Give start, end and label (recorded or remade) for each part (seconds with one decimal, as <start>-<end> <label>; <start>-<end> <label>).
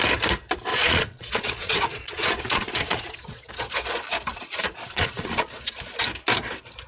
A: 0.0-0.7 recorded; 0.7-3.5 remade; 3.5-4.3 recorded; 4.3-5.7 remade; 5.7-6.9 recorded